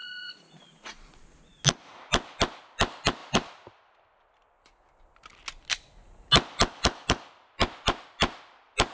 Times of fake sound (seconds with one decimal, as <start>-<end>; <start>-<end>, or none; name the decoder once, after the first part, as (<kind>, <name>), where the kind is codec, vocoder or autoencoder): 0.0-1.4 (vocoder, Vocos)